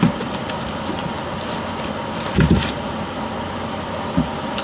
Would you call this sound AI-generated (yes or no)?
no